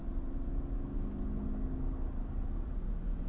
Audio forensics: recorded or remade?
recorded